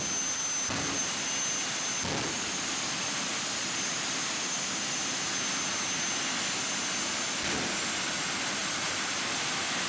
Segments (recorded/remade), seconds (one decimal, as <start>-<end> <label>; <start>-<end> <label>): 0.0-8.6 recorded; 8.6-9.9 remade